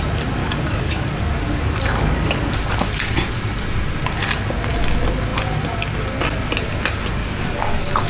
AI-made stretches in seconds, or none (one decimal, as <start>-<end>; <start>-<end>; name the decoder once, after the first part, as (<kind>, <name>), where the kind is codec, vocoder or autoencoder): 0.4-2.4 (codec, DAC); 7.1-8.1